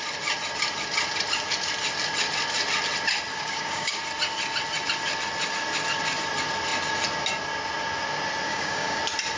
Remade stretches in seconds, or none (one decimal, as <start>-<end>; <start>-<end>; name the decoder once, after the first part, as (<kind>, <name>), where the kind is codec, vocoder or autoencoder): 3.3-4.0 (codec, DAC); 8.5-9.0